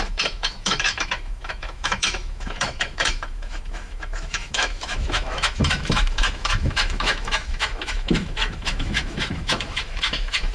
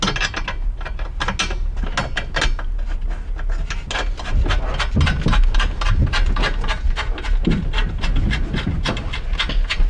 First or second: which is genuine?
second